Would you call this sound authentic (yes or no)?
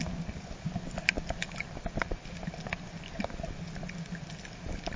yes